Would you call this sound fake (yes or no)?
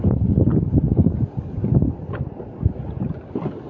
no